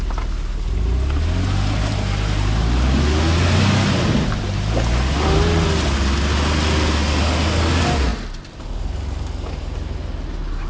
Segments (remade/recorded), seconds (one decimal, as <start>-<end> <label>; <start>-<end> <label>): 0.0-10.7 recorded